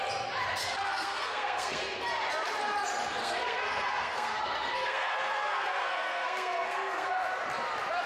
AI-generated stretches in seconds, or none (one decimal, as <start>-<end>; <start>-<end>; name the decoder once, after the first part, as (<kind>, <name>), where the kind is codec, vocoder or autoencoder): 0.6-2.0 (codec, SNAC); 3.2-7.1